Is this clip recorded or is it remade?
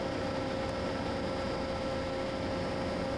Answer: recorded